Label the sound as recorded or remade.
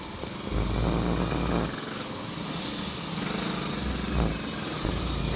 recorded